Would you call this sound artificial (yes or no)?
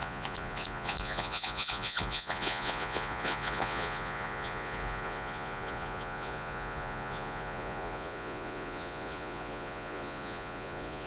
yes